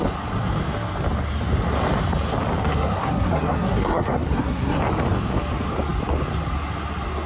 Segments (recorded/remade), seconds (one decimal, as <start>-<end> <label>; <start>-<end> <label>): 0.0-2.6 recorded; 2.6-4.8 remade; 4.8-7.3 recorded

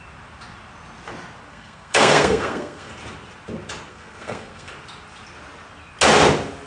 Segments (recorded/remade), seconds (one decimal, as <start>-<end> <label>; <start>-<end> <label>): 0.0-1.5 recorded; 1.5-2.9 remade; 2.9-3.9 recorded; 3.9-4.7 remade; 4.7-6.7 recorded

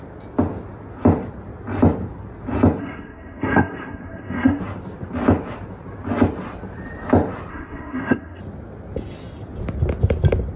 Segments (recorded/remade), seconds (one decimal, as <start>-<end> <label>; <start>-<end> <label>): 0.0-2.8 recorded; 2.8-4.6 remade; 4.6-7.5 recorded; 7.5-8.4 remade; 8.4-10.6 recorded